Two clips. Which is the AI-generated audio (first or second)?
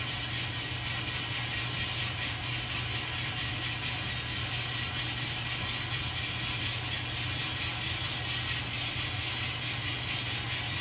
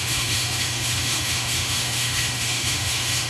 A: second